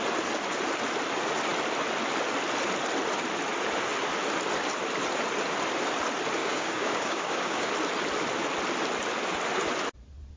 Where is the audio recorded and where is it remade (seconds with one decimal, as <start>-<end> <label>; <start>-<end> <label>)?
0.0-6.4 recorded; 6.4-7.7 remade; 7.7-10.4 recorded